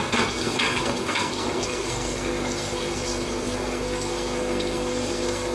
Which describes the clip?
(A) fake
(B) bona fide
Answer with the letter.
A